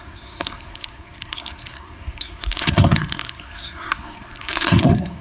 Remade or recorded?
remade